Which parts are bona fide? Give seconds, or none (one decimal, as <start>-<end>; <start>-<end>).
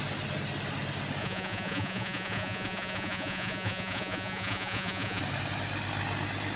0.0-1.2; 5.2-6.6